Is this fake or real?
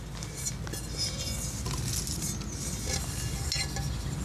real